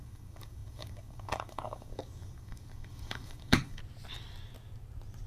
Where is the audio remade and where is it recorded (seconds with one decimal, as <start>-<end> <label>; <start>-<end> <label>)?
0.0-3.8 remade; 3.8-5.3 recorded